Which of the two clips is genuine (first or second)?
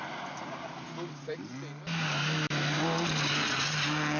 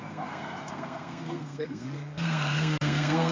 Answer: first